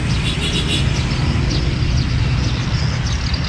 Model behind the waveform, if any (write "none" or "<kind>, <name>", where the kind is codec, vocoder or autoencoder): none